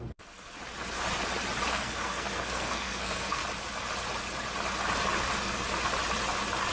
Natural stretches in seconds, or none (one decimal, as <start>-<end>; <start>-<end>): 0.6-1.7; 3.4-6.7